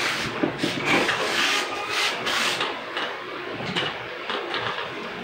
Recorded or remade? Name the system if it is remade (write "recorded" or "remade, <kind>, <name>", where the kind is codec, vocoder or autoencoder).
remade, codec, DAC